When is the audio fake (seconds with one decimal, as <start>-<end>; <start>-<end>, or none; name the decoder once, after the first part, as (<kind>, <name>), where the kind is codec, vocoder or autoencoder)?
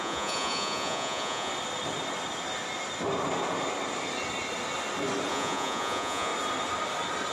0.0-1.5 (vocoder, Vocos); 5.3-6.3